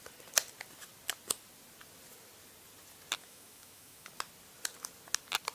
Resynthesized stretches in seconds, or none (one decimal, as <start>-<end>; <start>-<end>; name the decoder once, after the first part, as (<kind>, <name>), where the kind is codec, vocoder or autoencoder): 3.2-4.1 (autoencoder, DAC-VAE)